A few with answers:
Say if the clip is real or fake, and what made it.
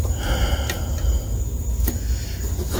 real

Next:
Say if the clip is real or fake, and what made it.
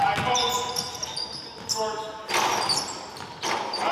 real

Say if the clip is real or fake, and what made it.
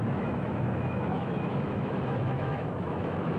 fake, autoencoder, DAC-VAE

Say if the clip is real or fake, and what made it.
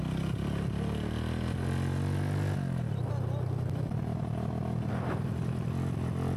real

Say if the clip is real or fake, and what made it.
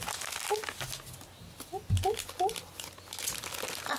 real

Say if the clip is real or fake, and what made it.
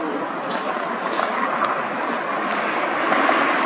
real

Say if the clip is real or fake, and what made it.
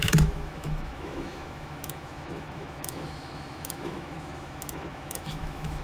fake, autoencoder, DAC-VAE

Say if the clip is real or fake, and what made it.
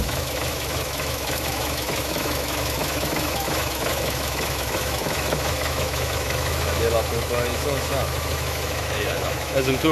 fake, autoencoder, DAC-VAE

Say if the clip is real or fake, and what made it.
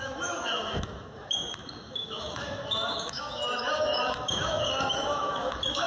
fake, autoencoder, DAC-VAE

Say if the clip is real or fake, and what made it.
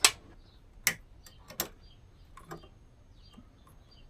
real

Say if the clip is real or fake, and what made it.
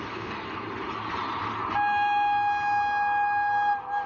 real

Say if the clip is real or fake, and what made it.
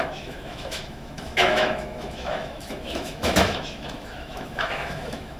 fake, autoencoder, DAC-VAE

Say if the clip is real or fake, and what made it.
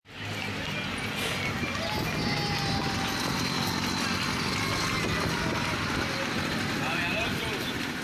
real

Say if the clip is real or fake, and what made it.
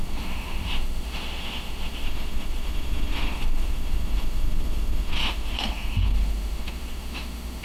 fake, autoencoder, DAC-VAE